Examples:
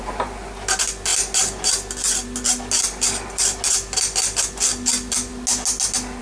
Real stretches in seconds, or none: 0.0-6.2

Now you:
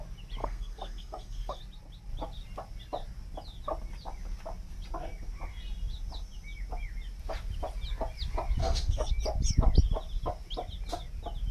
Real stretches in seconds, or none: 0.0-0.4; 1.6-8.6; 9.1-11.5

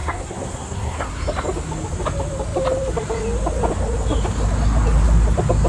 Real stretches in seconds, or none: 1.1-5.7